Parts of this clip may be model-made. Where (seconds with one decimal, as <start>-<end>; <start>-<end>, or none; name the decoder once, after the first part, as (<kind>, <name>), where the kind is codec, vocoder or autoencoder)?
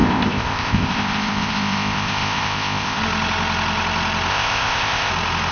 0.0-3.0 (codec, ZipCodec); 4.3-5.1